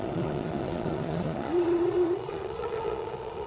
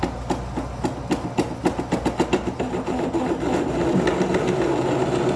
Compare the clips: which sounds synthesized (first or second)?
first